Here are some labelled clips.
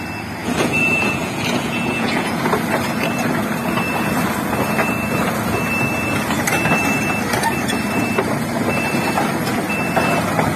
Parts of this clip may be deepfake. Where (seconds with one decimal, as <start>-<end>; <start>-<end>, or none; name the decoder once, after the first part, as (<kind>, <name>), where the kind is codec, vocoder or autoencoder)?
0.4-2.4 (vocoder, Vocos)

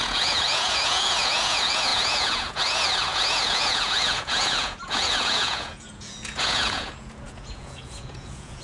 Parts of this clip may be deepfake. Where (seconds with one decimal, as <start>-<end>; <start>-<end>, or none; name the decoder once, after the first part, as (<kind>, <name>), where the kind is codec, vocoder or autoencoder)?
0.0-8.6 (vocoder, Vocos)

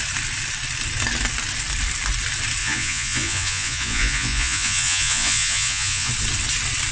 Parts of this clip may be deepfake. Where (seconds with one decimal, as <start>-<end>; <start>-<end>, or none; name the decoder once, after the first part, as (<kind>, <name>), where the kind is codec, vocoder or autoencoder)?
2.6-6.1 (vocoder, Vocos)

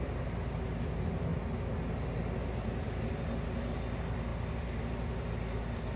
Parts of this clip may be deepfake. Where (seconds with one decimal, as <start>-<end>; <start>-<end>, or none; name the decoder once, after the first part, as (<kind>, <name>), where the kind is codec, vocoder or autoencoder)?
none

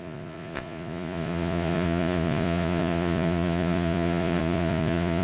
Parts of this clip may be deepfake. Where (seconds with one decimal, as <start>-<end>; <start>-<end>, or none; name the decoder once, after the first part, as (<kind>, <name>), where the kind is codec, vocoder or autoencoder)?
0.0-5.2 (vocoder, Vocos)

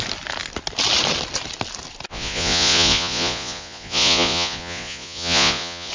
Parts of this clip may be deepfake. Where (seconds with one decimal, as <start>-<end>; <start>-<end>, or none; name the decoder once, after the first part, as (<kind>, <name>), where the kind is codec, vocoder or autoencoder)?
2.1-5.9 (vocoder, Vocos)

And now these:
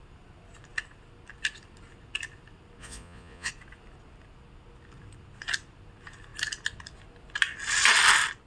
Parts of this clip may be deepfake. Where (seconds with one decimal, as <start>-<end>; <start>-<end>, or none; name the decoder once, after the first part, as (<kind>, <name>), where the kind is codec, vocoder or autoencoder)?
2.8-3.5 (vocoder, Vocos)